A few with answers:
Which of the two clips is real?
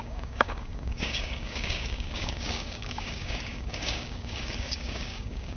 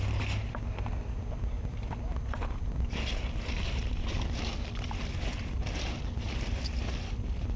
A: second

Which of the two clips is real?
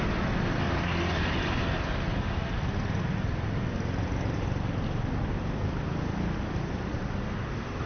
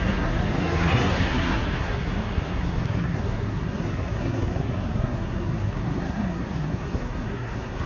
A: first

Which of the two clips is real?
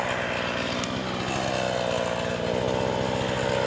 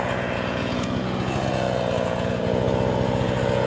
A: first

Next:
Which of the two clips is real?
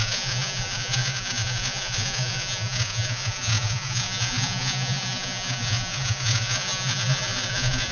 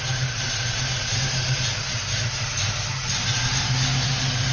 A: second